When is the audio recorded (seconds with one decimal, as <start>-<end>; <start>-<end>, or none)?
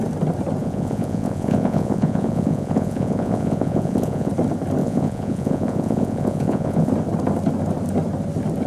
0.0-0.6; 4.3-4.8; 6.9-8.7